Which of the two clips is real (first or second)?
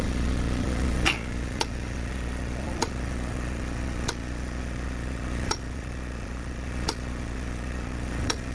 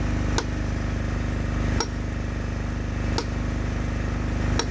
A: second